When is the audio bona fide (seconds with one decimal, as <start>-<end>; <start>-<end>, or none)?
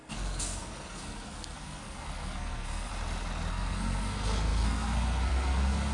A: 2.9-3.5